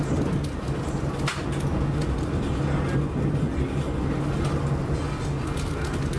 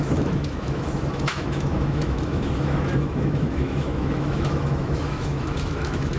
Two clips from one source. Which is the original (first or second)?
first